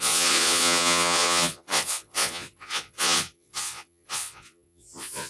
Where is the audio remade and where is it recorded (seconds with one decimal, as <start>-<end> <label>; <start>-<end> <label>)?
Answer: 0.0-5.3 remade